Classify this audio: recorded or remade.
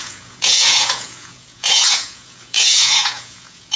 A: remade